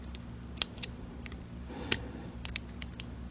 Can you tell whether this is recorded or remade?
recorded